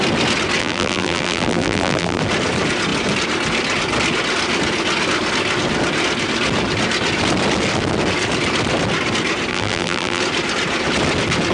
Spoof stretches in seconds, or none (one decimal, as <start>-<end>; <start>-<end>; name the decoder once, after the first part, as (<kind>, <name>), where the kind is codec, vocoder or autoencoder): 0.6-2.2 (vocoder, BigVGAN v2); 9.5-10.2